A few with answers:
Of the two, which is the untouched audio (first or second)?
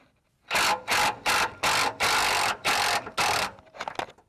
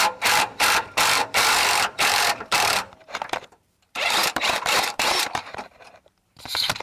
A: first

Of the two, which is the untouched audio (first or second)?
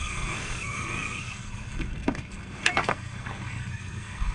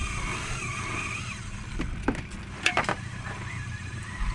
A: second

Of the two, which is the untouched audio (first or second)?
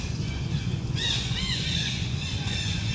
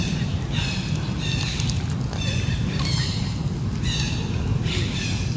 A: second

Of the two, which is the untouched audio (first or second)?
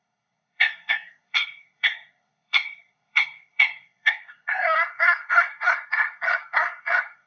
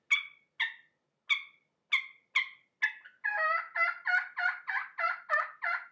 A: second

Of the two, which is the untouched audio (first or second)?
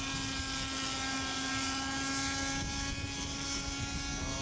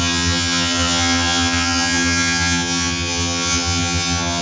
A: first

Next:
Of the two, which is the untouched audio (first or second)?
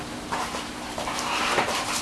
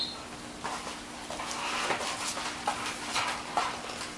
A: second